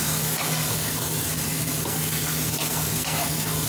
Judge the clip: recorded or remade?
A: remade